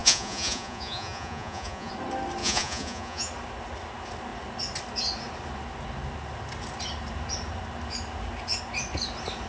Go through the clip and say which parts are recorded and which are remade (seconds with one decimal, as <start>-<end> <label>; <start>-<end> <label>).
0.0-1.9 remade; 1.9-2.4 recorded; 2.4-3.3 remade; 3.3-9.5 recorded